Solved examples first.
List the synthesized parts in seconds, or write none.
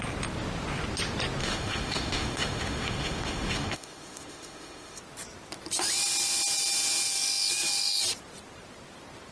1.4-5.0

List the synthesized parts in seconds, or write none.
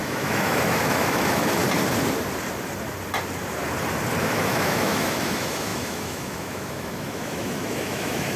0.0-1.6; 4.2-8.4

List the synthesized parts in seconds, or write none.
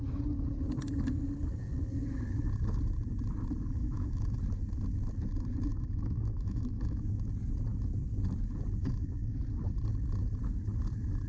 3.8-4.4; 5.7-7.3; 8.8-9.4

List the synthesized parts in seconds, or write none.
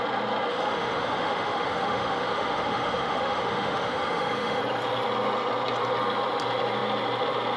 0.5-4.6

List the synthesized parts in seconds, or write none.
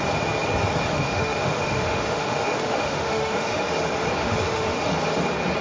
0.9-3.7; 4.2-4.8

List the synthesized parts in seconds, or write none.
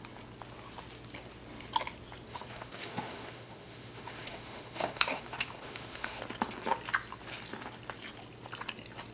2.3-6.2